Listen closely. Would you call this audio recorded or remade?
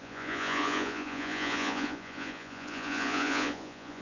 remade